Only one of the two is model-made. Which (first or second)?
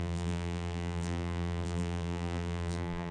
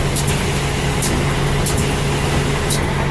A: first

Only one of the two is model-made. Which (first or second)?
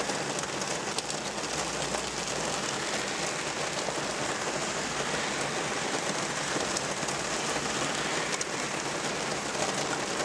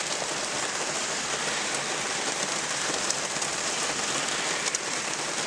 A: second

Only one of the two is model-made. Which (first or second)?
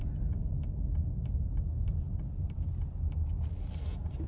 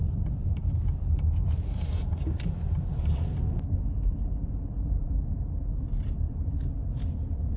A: second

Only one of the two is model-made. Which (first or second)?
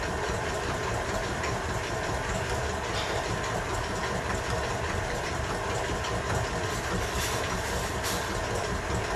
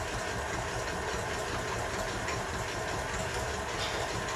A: first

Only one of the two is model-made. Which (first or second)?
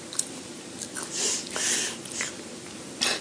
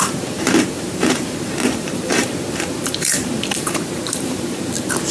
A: second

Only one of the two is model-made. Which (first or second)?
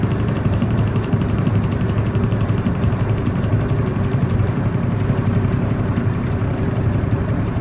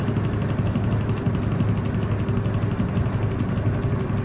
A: first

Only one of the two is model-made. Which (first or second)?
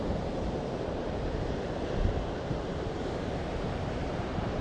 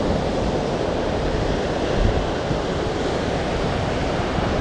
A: first